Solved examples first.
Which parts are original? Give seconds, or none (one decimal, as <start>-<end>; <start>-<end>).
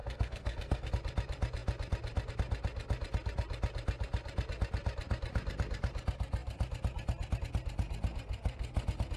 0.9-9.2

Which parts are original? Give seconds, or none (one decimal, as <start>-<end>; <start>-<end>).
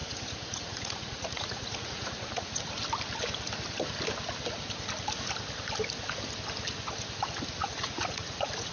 2.6-7.6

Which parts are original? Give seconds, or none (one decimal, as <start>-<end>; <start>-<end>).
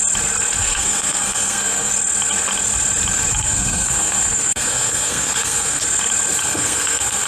0.0-0.6; 1.9-3.3; 5.8-6.4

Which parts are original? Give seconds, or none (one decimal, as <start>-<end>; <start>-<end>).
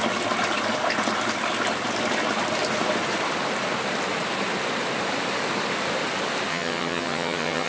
0.0-6.5